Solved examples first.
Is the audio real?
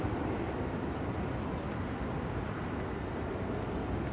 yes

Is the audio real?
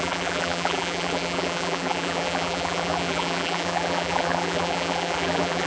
no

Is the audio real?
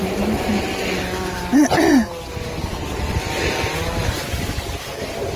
yes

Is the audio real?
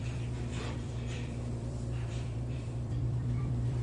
no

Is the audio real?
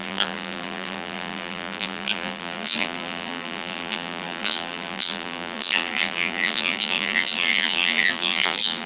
no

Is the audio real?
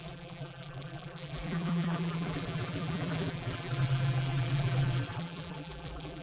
no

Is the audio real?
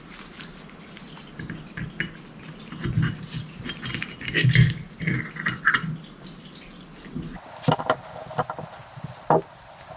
yes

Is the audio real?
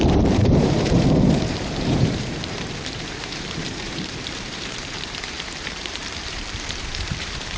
no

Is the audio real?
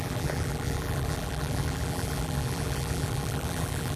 no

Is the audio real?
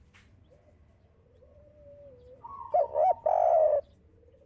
yes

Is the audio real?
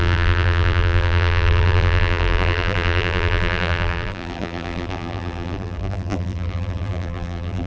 no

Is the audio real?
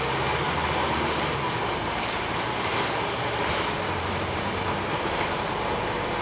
no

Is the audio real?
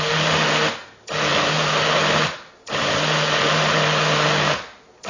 yes